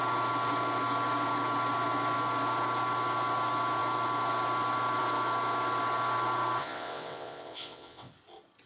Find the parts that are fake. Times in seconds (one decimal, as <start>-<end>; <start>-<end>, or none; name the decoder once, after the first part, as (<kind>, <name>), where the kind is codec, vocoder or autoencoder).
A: 6.6-8.1 (vocoder, WaveNeXt)